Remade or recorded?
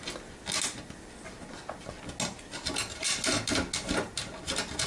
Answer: recorded